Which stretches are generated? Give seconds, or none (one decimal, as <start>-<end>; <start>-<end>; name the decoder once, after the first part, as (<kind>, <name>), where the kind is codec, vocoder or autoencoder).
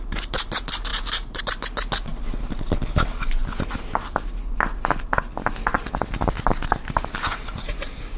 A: 0.9-1.4 (vocoder, BigVGAN v2)